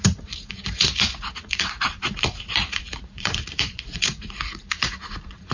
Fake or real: fake